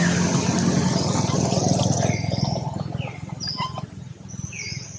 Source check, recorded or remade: recorded